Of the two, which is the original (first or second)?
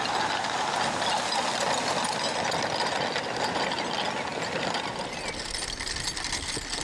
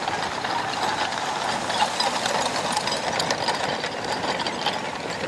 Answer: first